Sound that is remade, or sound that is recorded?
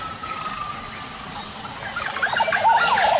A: recorded